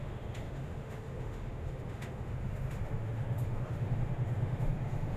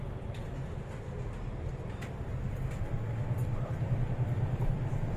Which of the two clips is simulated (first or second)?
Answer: first